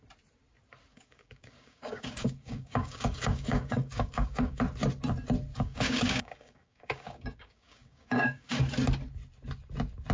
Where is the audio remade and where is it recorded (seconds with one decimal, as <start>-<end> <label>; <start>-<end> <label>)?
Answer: 0.0-0.9 recorded; 0.9-4.6 remade; 4.6-5.5 recorded; 5.5-8.6 remade; 8.6-10.1 recorded